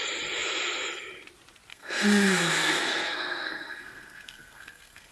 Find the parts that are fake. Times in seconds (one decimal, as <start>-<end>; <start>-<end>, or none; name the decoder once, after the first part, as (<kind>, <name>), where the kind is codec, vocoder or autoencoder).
1.7-5.1 (codec, SNAC)

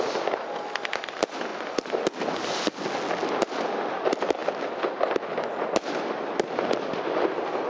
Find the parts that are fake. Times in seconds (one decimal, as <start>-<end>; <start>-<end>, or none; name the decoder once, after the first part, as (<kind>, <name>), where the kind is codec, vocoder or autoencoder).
none

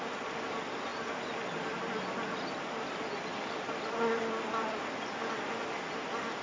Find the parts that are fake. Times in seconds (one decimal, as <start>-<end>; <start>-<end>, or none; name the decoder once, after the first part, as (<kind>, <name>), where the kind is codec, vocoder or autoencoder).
none

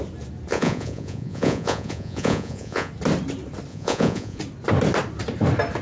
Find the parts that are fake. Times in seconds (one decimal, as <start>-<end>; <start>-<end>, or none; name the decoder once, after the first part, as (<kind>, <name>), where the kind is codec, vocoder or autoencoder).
0.5-2.9 (vocoder, Vocos); 3.7-4.4